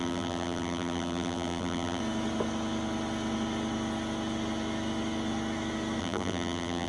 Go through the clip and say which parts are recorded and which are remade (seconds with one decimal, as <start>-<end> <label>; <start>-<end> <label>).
0.0-2.0 remade; 2.0-6.0 recorded; 6.0-6.9 remade